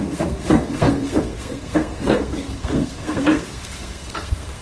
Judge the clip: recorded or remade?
remade